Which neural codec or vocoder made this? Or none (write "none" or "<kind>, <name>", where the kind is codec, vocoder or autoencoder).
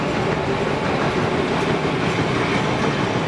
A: none